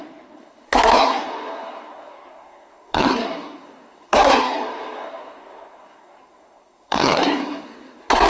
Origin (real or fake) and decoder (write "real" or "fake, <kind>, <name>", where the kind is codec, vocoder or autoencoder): fake, codec, SNAC